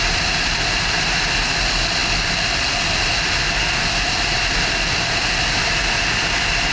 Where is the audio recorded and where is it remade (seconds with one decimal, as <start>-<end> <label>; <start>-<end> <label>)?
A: 0.0-6.7 recorded